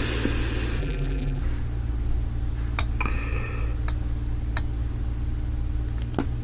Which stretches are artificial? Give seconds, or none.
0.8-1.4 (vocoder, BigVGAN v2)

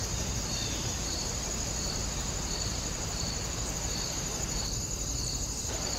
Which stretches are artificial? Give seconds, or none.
0.0-6.0 (vocoder, BigVGAN v2)

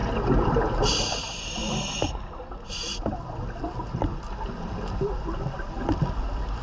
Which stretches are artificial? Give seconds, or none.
0.0-1.2 (vocoder, BigVGAN v2)

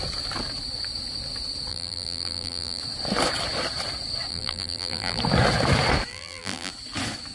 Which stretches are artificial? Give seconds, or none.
1.7-2.8 (vocoder, BigVGAN v2); 4.3-5.2; 6.1-6.7

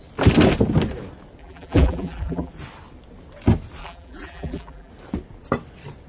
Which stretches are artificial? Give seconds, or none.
1.4-2.5 (vocoder, BigVGAN v2); 3.8-4.9

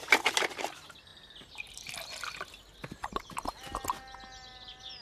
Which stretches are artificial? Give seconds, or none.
none

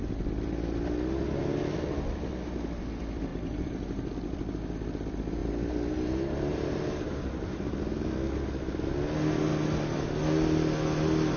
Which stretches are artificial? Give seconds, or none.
3.3-4.1 (vocoder, BigVGAN v2); 5.4-7.8

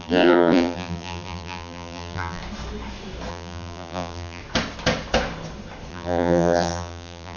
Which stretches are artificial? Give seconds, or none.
0.0-2.4 (vocoder, BigVGAN v2); 3.3-4.4; 5.9-7.4